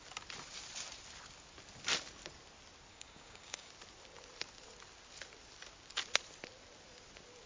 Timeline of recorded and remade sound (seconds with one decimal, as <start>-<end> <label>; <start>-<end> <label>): 0.0-2.9 recorded; 2.9-3.7 remade; 3.7-7.5 recorded